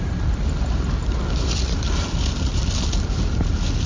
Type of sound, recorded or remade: recorded